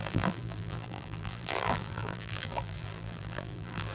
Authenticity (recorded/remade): remade